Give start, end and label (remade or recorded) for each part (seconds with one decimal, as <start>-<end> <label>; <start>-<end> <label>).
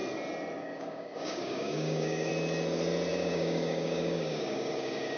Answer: 0.0-0.6 recorded; 0.6-2.3 remade; 2.3-3.1 recorded; 3.1-5.2 remade